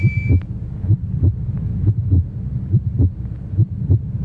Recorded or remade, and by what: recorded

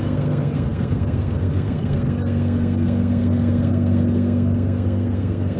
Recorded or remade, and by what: remade, codec, SNAC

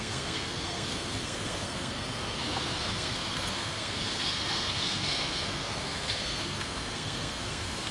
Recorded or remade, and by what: remade, codec, SNAC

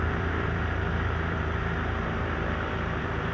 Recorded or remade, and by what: remade, vocoder, BigVGAN v2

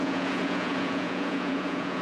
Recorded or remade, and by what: remade, vocoder, Vocos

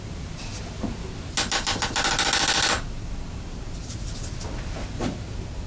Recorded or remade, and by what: recorded